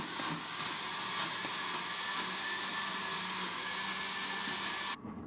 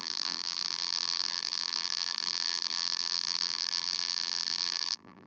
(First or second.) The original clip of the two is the first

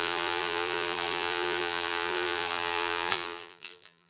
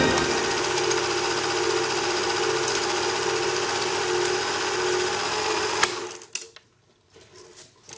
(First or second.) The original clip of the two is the second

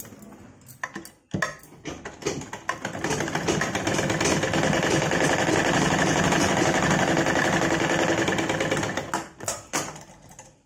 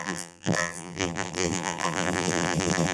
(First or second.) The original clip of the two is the first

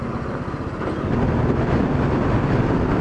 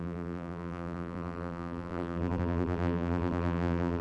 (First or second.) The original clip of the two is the first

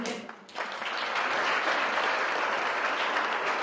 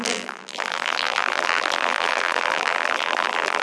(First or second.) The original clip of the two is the first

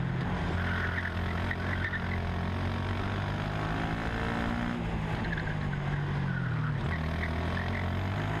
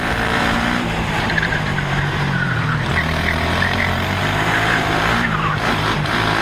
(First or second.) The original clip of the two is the first